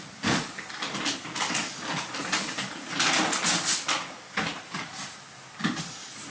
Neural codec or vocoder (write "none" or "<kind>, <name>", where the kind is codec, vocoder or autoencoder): none